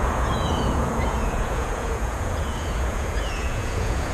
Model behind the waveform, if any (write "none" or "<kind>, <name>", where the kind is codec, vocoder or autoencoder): vocoder, Vocos